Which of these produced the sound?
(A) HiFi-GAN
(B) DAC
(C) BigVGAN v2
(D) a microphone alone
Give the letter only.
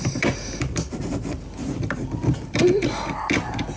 D